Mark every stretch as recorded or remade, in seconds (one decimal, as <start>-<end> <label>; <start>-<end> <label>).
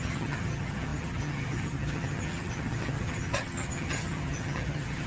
0.0-5.1 remade